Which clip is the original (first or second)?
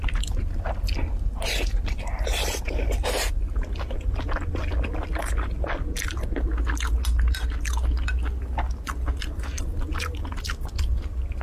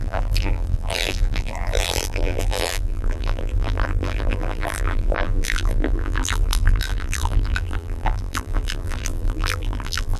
first